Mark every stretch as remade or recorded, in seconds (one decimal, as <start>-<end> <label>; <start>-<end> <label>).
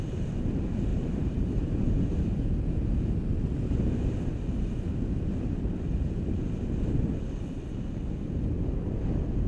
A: 0.0-0.9 recorded; 0.9-2.5 remade; 2.5-9.5 recorded